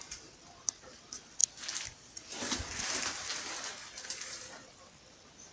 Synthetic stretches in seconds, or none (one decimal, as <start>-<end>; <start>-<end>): 0.0-5.5